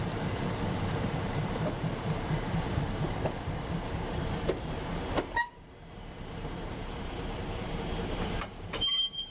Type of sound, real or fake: fake